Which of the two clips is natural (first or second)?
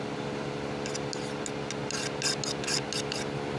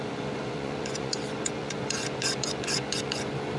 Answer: first